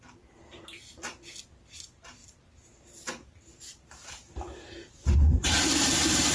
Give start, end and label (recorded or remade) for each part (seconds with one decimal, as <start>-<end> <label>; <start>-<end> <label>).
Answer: 0.0-2.2 recorded; 2.2-6.3 remade

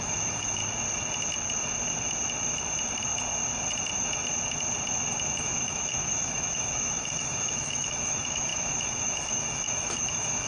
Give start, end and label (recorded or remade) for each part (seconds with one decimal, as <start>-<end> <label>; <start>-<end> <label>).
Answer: 0.0-0.6 remade; 0.6-5.4 recorded; 5.4-10.5 remade